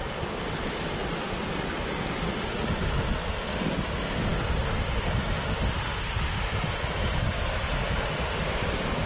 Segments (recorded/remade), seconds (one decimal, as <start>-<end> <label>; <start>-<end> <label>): 0.0-9.1 recorded